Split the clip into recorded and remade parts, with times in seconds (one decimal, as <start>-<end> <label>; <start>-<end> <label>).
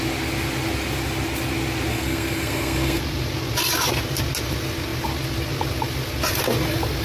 0.0-1.9 recorded; 1.9-3.0 remade; 3.0-7.0 recorded